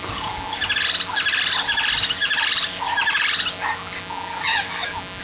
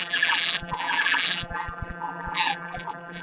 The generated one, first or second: second